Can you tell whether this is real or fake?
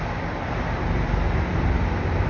fake